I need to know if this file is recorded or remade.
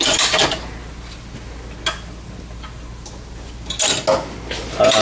recorded